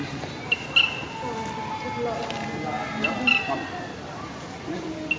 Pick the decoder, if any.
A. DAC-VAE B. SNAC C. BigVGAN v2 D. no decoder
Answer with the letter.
D